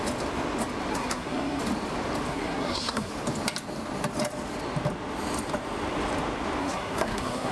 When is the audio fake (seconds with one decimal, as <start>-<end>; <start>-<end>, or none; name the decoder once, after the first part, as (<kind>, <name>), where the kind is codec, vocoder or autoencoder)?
0.9-1.6 (codec, SNAC); 2.3-3.1; 6.6-7.5